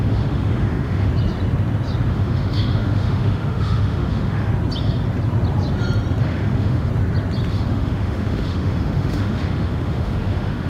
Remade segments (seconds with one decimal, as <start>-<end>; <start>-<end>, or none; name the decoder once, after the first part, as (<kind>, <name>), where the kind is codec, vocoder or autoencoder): 0.0-1.1 (autoencoder, DAC-VAE); 2.1-4.5; 6.2-6.9; 7.5-10.7